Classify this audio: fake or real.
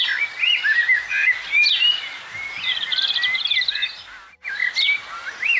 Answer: fake